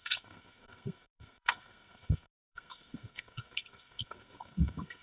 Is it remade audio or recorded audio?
remade